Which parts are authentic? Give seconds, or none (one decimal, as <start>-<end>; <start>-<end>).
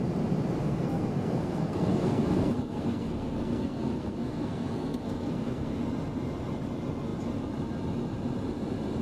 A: 0.0-0.6; 5.8-9.0